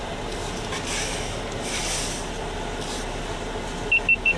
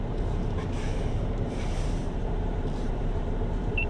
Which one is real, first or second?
first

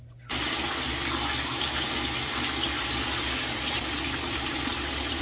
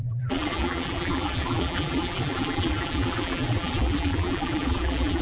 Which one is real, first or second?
first